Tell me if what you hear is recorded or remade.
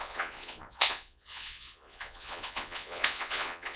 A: remade